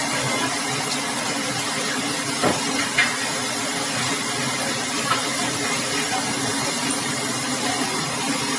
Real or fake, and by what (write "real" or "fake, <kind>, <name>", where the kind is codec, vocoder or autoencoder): real